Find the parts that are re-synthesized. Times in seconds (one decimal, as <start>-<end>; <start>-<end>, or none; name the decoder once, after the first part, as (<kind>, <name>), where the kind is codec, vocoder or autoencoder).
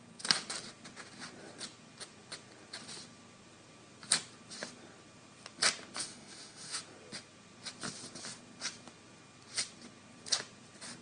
6.0-6.8 (autoencoder, DAC-VAE)